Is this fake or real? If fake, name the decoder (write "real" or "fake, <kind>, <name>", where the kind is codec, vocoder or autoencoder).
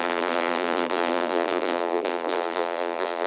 fake, vocoder, BigVGAN v2